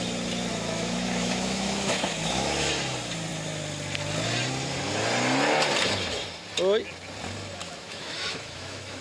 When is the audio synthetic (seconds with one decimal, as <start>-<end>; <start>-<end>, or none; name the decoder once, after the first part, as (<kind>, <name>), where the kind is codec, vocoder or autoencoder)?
0.5-2.7 (autoencoder, DAC-VAE); 7.6-9.0